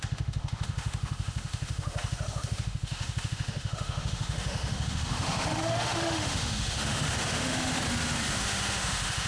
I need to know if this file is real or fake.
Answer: fake